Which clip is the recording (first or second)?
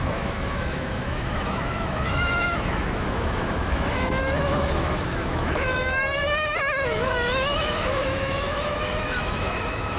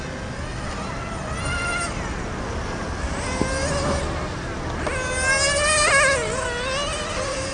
second